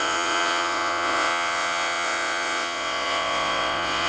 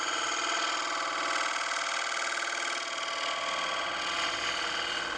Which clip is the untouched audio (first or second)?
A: second